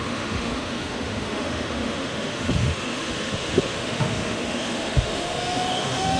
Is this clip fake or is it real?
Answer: fake